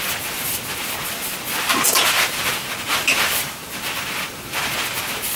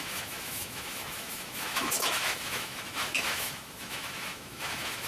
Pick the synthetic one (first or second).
second